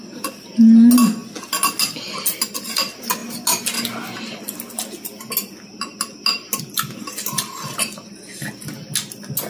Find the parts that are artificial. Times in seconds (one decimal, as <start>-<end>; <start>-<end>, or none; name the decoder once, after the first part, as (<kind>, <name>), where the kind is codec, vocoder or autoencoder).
none